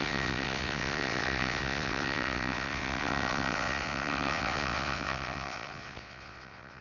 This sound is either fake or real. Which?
fake